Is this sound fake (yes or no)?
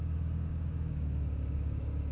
yes